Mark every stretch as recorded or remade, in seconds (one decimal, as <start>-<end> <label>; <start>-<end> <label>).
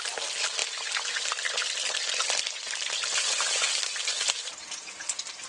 0.0-5.5 recorded